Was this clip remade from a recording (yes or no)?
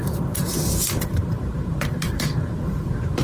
yes